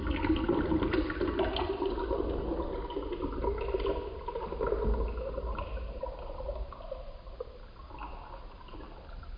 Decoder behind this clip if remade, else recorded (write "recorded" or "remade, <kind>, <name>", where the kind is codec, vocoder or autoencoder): recorded